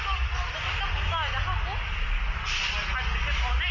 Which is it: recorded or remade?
recorded